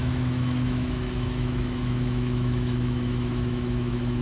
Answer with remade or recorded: remade